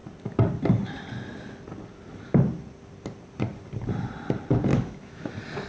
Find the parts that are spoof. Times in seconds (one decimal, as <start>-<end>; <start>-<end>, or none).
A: 4.7-5.3